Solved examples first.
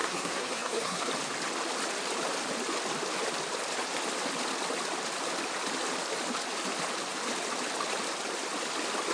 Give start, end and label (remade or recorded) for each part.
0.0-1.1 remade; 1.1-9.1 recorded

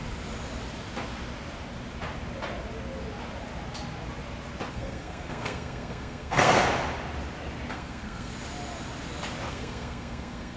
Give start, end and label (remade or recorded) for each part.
0.0-4.7 recorded; 4.7-6.6 remade; 6.6-7.7 recorded; 7.7-8.3 remade; 8.3-9.5 recorded; 9.5-10.6 remade